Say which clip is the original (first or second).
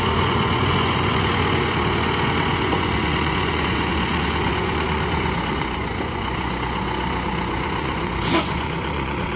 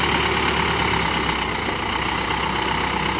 second